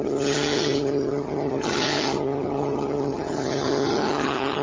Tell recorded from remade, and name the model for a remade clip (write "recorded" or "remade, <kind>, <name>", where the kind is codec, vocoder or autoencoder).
remade, vocoder, HiFi-GAN